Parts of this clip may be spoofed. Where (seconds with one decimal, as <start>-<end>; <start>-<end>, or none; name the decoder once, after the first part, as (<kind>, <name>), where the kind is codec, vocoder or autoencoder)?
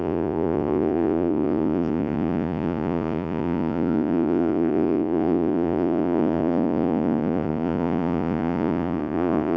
0.0-9.6 (vocoder, Vocos)